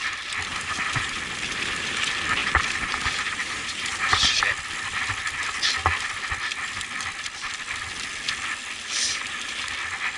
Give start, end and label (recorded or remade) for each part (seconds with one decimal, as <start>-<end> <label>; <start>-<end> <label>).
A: 0.0-0.5 recorded; 0.5-1.2 remade; 1.2-2.4 recorded; 2.4-4.4 remade; 4.4-10.2 recorded